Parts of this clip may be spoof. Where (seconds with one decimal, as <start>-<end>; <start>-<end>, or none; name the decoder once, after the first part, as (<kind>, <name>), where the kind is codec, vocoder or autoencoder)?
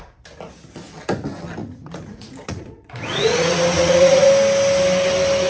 1.6-4.3 (vocoder, Vocos)